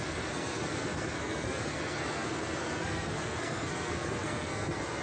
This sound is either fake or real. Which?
fake